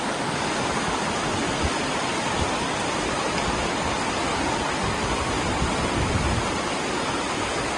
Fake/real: real